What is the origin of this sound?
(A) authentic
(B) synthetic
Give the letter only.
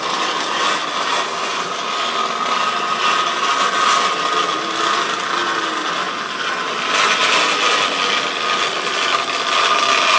A